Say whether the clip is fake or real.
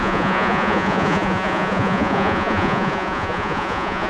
fake